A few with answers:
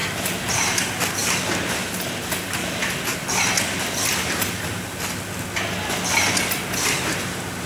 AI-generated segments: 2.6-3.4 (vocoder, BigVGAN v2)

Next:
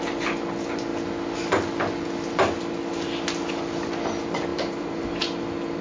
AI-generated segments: 4.5-5.2 (vocoder, BigVGAN v2)

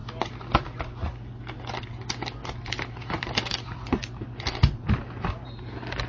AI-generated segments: 2.4-5.6 (vocoder, BigVGAN v2)

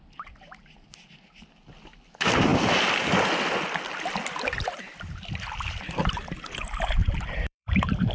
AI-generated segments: 7.0-8.1 (vocoder, BigVGAN v2)

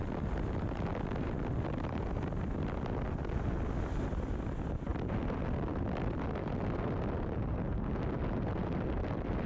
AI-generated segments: 4.9-6.5 (vocoder, BigVGAN v2); 8.5-9.5

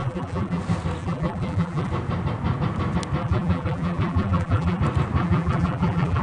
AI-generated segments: 0.0-0.6 (vocoder, BigVGAN v2); 1.0-1.9; 3.2-4.8; 5.2-6.2